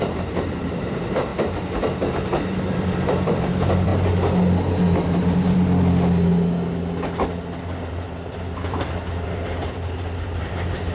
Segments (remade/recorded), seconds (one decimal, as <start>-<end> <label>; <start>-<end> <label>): 0.0-1.3 remade; 1.3-2.1 recorded; 2.1-3.9 remade; 3.9-7.8 recorded; 7.8-10.9 remade